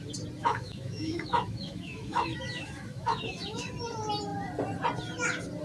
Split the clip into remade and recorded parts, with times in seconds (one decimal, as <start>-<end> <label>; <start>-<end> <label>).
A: 0.0-0.4 recorded; 0.4-3.7 remade; 3.7-5.6 recorded